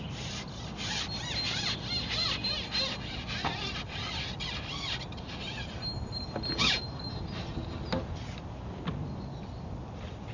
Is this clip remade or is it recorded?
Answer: recorded